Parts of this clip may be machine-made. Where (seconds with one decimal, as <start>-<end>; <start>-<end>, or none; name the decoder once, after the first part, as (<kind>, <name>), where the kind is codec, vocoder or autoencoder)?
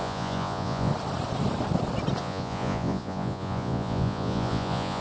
0.0-0.9 (vocoder, Vocos); 2.2-5.0